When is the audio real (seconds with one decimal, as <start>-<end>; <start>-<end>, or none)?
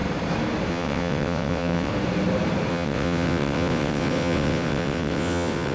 0.0-0.7; 1.9-2.7